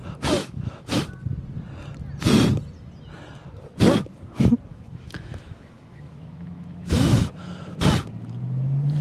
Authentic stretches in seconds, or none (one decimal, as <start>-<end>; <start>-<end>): 0.0-0.4; 1.0-4.7; 7.8-9.0